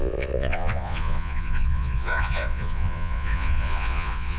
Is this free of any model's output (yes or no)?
no